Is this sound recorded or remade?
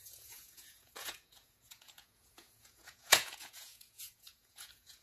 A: remade